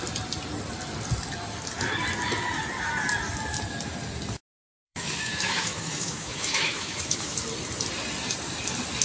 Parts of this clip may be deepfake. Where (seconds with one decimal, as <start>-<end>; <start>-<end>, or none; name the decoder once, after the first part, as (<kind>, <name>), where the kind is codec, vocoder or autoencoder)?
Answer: 4.8-7.4 (autoencoder, DAC-VAE)